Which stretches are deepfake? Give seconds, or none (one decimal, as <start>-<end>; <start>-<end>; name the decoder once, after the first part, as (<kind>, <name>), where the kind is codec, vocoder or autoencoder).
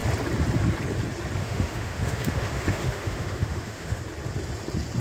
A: 1.4-4.0 (autoencoder, DAC-VAE)